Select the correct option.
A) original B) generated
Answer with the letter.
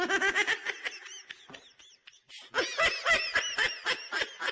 A